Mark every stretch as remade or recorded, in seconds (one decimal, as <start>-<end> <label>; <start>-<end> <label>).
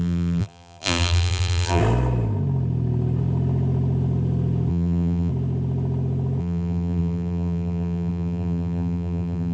0.0-1.8 remade; 1.8-4.7 recorded; 4.7-5.3 remade; 5.3-6.4 recorded; 6.4-9.5 remade